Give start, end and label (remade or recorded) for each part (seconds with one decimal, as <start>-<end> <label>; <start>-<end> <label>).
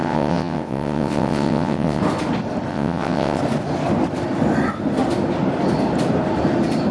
0.0-2.0 remade; 2.0-2.7 recorded; 2.7-3.4 remade; 3.4-6.9 recorded